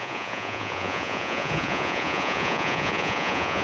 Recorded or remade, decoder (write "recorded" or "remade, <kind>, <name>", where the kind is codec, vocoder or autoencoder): remade, vocoder, Vocos